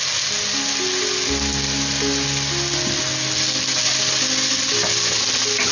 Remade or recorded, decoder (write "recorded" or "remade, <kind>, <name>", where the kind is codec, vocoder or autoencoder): recorded